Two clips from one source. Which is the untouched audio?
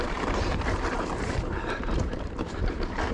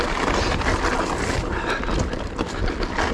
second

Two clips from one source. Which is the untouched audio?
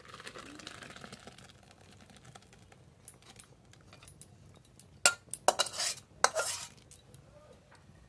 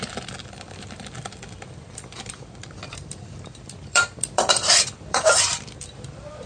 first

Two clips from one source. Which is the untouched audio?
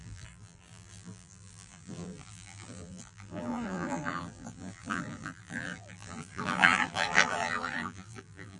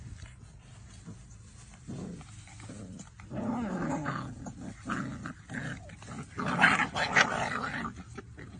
second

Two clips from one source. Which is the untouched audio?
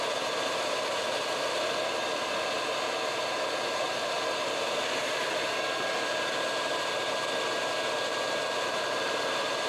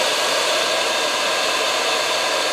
first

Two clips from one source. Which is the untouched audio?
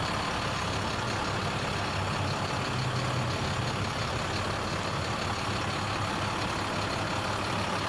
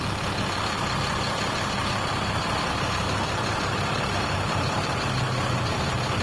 first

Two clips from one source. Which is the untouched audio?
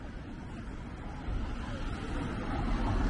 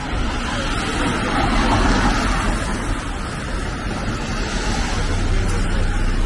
second